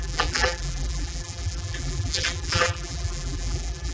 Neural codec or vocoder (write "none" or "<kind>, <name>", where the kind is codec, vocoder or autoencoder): vocoder, BigVGAN v2